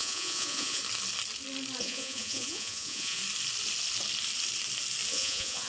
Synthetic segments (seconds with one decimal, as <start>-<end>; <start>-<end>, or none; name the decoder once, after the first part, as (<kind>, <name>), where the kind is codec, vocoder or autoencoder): 0.0-0.8 (vocoder, Vocos); 1.8-3.2; 5.1-5.7